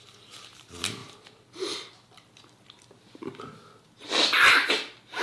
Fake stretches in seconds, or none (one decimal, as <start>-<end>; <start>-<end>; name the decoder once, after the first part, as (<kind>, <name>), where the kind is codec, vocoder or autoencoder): none